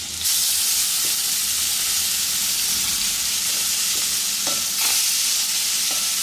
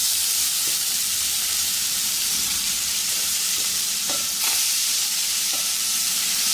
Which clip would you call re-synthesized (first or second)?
second